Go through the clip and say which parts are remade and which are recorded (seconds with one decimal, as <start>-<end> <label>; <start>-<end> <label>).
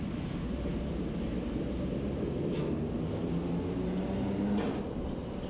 0.0-5.5 recorded